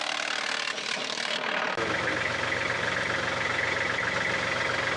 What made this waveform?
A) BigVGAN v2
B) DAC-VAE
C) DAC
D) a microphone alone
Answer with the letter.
D